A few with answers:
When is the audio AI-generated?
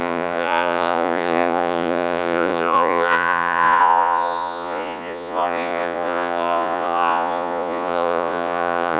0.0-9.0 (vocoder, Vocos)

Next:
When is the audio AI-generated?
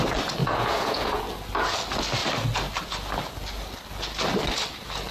0.4-1.2 (vocoder, Vocos)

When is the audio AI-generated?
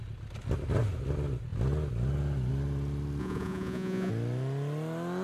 3.2-4.1 (vocoder, Vocos)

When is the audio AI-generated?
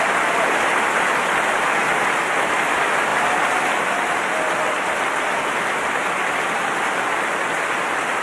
none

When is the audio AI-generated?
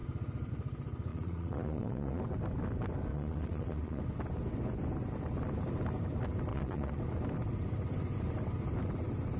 1.1-2.2 (vocoder, Vocos); 3.1-4.0; 6.5-7.0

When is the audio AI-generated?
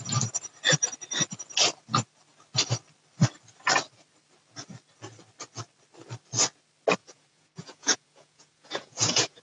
7.0-9.4 (vocoder, Vocos)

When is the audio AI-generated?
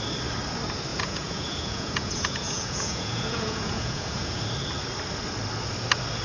0.9-4.4 (vocoder, Vocos)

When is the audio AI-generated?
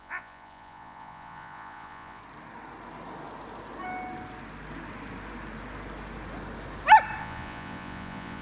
0.0-2.2 (vocoder, Vocos); 7.2-8.4